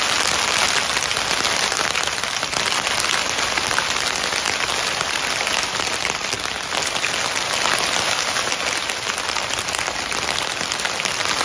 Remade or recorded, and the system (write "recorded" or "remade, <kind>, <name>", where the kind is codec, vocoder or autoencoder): recorded